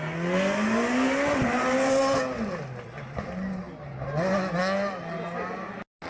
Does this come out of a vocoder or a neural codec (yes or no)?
no